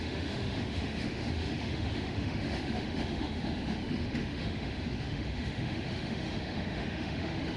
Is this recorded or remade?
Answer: remade